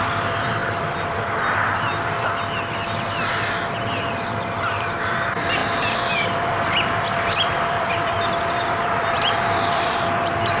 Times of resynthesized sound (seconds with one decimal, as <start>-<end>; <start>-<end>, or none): 0.0-10.6